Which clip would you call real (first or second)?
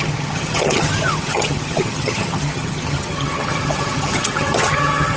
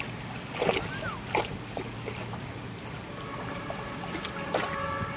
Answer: second